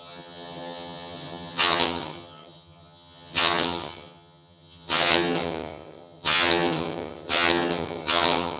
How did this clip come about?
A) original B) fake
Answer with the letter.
B